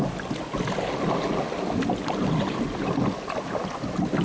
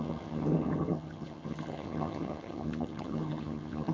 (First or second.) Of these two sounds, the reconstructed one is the second